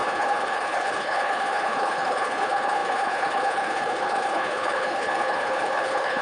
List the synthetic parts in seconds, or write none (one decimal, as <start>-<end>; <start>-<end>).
0.0-6.2